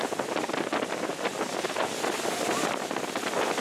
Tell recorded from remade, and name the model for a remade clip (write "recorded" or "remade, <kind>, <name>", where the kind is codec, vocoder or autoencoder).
remade, vocoder, BigVGAN v2